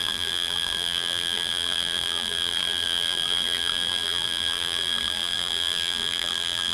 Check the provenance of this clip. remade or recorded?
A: remade